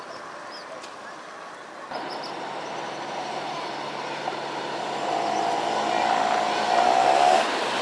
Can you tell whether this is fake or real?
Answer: real